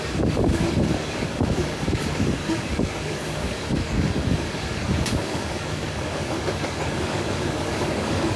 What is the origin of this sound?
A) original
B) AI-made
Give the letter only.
B